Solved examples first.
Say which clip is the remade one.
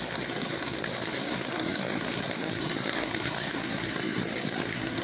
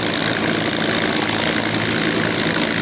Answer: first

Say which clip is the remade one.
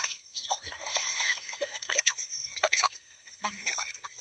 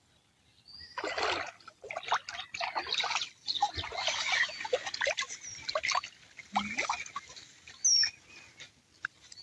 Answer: first